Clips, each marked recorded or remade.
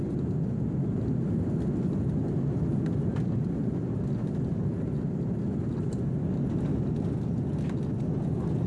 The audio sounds recorded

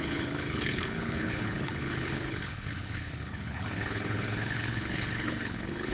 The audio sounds remade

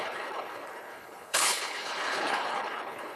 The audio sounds remade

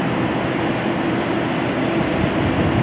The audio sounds recorded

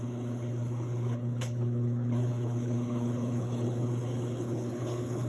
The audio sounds remade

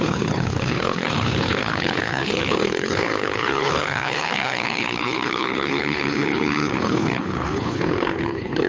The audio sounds remade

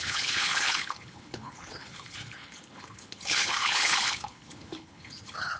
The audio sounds remade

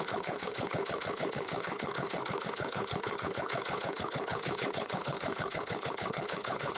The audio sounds remade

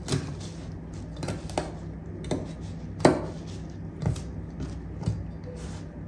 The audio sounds recorded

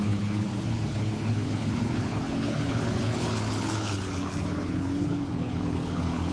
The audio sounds remade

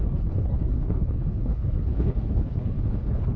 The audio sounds remade